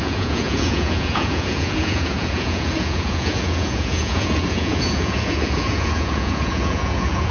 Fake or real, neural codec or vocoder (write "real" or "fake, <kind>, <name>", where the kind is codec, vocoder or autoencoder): fake, vocoder, Vocos